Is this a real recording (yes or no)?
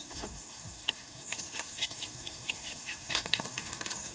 no